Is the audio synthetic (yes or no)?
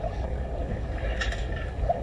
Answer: yes